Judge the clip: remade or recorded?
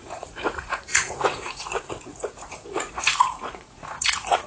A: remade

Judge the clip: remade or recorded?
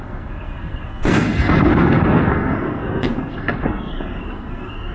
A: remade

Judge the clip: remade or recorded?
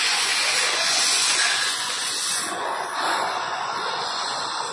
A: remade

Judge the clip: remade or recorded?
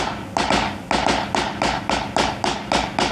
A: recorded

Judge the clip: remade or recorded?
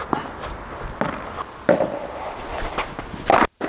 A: recorded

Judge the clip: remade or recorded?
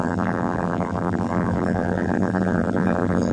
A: remade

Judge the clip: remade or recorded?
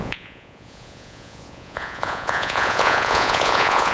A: remade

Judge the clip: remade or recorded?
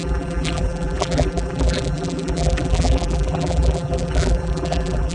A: remade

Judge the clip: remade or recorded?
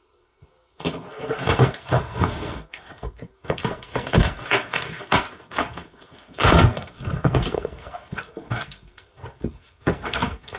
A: remade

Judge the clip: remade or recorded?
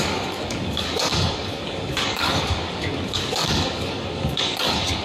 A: remade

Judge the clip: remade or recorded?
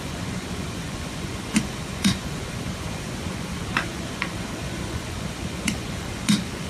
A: remade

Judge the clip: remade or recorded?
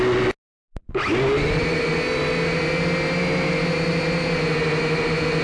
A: recorded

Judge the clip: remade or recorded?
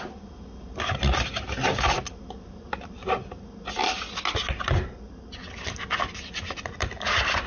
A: recorded